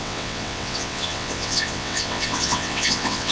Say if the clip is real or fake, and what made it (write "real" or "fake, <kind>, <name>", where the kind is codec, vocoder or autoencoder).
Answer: fake, vocoder, WaveNeXt